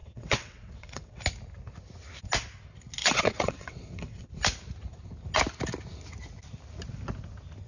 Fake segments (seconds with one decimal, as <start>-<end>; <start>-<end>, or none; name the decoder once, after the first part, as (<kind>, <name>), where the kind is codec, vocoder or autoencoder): 0.0-1.2 (vocoder, WaveNeXt); 3.0-4.3